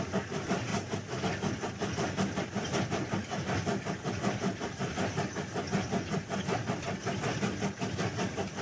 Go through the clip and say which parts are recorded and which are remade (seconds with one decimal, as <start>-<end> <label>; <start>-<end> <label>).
0.0-8.6 recorded